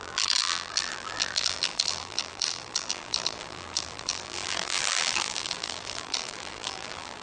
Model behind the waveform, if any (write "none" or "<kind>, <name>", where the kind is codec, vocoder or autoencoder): vocoder, BigVGAN v2